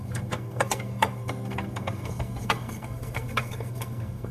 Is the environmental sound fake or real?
fake